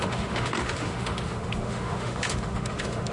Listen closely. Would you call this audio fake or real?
fake